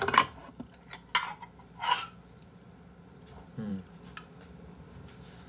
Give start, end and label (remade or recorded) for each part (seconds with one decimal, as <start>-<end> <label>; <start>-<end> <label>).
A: 0.0-5.5 recorded